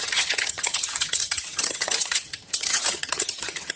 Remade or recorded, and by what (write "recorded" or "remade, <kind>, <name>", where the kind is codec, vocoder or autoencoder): remade, vocoder, HiFi-GAN